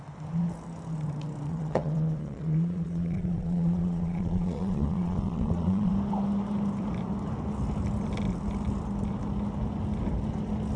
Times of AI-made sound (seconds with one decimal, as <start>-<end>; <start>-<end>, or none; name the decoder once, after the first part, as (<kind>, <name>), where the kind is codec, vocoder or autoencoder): 1.5-5.9 (vocoder, Vocos)